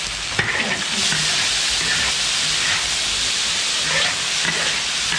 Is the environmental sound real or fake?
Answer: real